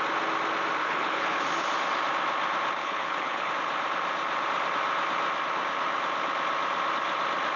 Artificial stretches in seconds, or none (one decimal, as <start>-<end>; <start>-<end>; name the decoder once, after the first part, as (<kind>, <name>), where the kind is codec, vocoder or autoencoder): 0.8-1.4 (codec, HILCodec); 2.8-3.5